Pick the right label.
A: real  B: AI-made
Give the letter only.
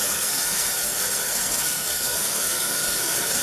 B